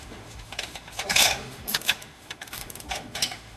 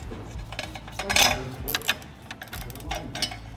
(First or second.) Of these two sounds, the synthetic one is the first